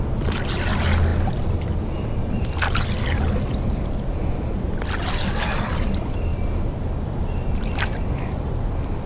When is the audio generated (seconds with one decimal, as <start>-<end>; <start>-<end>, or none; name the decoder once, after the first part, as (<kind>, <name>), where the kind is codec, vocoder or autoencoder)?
none